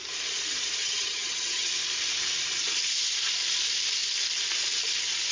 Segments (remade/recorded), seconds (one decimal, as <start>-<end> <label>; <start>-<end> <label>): 0.0-0.8 recorded; 0.8-1.7 remade; 1.7-5.3 recorded